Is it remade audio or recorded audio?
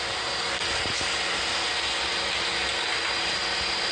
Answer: recorded